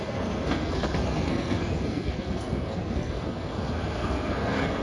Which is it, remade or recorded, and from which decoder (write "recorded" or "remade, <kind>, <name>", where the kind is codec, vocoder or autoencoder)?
remade, codec, SNAC